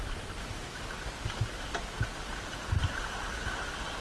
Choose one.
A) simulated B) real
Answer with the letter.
B